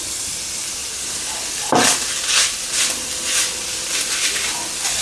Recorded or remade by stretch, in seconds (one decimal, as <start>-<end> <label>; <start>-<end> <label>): 0.0-0.8 recorded; 0.8-1.3 remade; 1.3-5.0 recorded